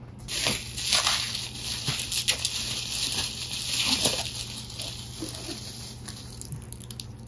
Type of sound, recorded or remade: recorded